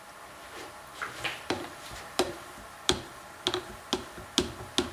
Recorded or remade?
recorded